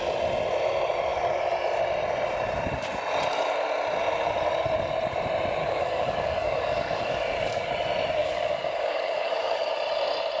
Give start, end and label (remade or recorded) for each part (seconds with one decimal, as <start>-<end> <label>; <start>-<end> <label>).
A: 0.0-5.6 recorded; 5.6-7.7 remade; 7.7-8.2 recorded; 8.2-9.7 remade; 9.7-10.4 recorded